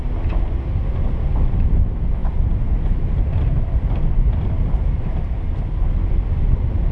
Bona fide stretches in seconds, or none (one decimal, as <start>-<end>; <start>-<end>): 0.0-6.9